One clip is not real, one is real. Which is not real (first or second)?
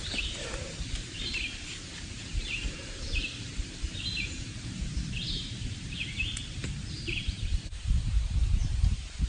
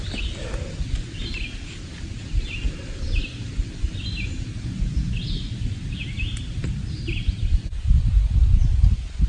first